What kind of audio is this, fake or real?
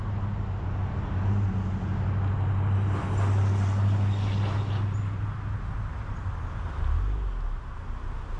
real